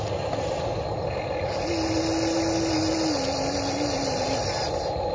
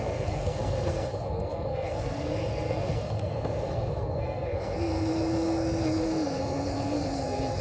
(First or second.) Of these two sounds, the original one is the first